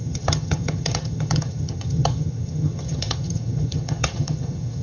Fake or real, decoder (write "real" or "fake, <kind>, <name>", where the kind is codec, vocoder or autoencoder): fake, vocoder, HiFi-GAN